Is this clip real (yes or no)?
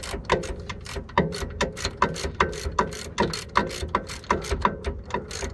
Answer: yes